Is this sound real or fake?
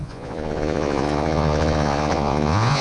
fake